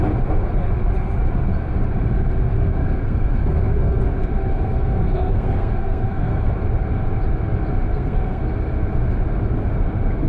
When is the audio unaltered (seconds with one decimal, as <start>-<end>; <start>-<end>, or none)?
0.0-2.7; 4.0-4.5; 6.5-7.9; 8.4-10.3